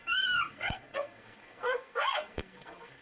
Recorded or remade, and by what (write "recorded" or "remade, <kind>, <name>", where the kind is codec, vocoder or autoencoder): remade, codec, SNAC